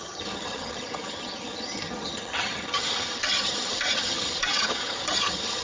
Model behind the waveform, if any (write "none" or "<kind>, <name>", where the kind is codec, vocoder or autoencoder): vocoder, HiFi-GAN